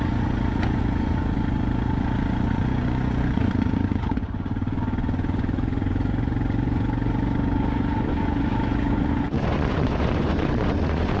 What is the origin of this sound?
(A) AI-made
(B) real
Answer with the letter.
A